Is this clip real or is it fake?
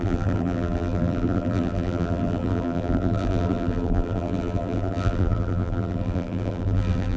fake